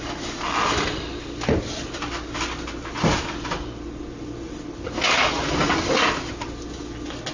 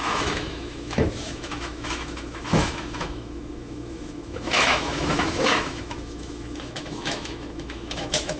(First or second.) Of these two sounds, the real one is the first